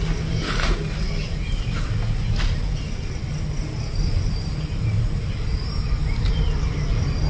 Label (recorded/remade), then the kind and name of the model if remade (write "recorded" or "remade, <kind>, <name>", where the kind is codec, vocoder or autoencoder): recorded